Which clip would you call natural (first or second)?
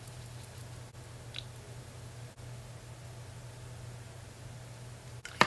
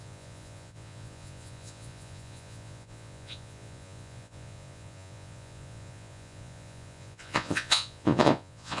first